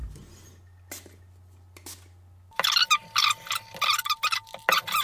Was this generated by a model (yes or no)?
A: no